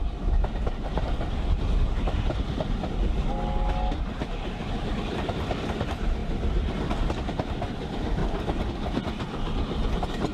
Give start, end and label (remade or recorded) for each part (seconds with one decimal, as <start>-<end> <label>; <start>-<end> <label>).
0.0-10.3 recorded